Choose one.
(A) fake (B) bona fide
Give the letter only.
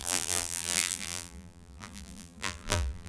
A